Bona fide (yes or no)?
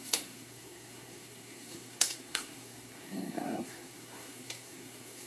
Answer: no